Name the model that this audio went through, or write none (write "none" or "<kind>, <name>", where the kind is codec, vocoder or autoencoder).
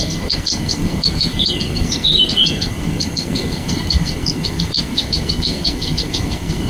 codec, SNAC